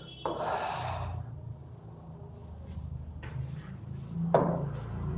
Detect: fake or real real